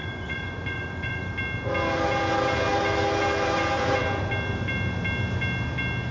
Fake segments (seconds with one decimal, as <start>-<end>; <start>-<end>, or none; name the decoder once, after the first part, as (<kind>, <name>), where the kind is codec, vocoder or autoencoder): 0.0-1.2 (vocoder, Vocos)